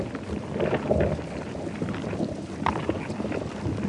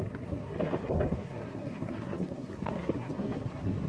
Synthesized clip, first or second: second